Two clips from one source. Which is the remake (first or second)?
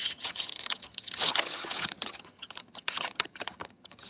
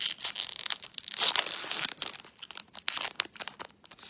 first